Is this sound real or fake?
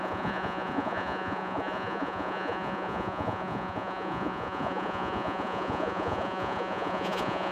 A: fake